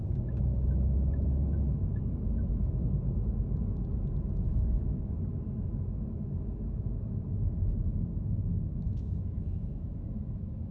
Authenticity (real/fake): fake